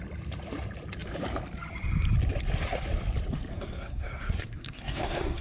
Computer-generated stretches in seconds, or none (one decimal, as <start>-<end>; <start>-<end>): 3.5-5.4